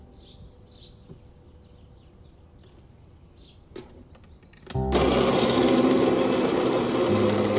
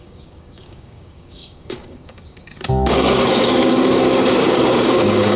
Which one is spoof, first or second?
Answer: second